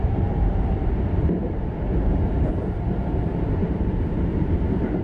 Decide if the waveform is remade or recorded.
remade